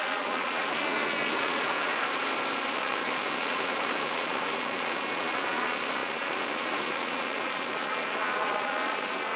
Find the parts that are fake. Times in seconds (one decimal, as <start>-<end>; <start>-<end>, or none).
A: 0.0-2.0; 2.7-9.4